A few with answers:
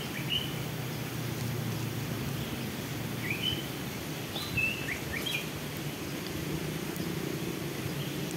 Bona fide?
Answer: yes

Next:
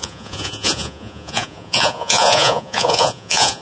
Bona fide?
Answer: no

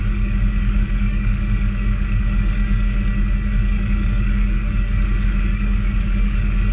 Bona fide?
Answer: no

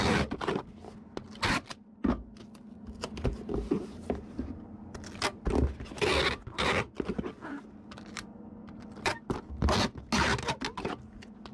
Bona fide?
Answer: yes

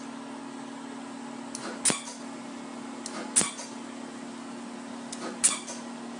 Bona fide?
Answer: yes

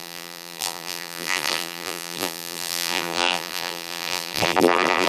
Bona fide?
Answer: no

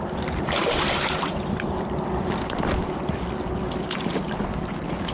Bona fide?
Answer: yes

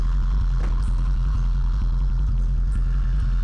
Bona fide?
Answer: yes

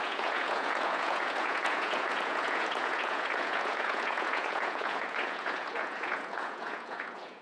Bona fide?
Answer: no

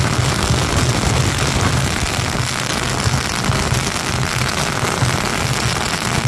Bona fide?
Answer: yes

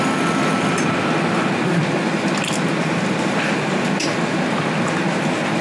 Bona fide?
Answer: yes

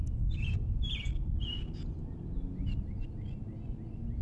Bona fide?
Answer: yes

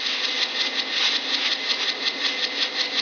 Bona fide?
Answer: yes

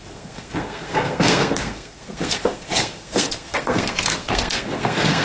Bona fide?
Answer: no